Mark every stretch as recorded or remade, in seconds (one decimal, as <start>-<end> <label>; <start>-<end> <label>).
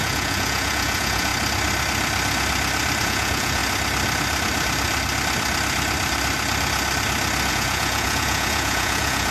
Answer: 0.0-1.3 remade; 1.3-3.0 recorded; 3.0-3.6 remade; 3.6-7.5 recorded; 7.5-9.3 remade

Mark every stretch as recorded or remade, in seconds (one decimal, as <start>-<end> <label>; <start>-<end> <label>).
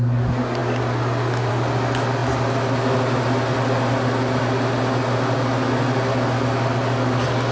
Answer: 0.0-7.5 recorded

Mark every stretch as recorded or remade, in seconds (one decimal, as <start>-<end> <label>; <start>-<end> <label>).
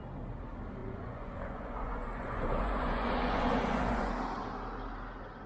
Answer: 0.0-0.8 recorded; 0.8-4.1 remade; 4.1-5.5 recorded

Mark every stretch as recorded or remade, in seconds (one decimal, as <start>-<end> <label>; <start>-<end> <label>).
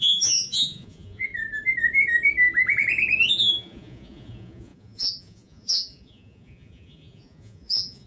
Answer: 0.0-1.3 remade; 1.3-3.3 recorded; 3.3-8.1 remade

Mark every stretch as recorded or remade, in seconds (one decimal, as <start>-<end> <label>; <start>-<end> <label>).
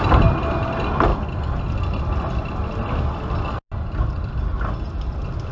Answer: 0.0-5.5 recorded